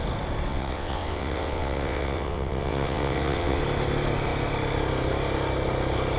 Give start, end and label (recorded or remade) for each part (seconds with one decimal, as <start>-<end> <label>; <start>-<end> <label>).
0.0-0.5 recorded; 0.5-3.6 remade; 3.6-6.2 recorded